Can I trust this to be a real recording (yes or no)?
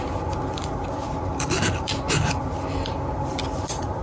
no